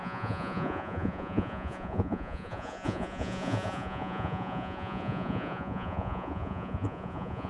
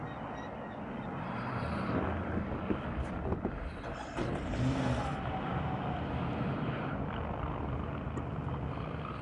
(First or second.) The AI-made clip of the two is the first